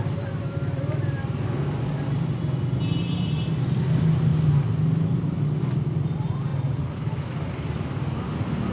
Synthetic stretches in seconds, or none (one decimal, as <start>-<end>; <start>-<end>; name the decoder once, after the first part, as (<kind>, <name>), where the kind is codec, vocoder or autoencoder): none